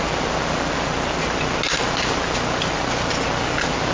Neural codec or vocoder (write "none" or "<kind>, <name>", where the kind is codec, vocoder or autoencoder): none